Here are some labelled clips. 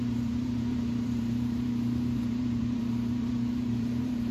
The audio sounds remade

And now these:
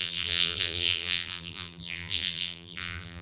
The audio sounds remade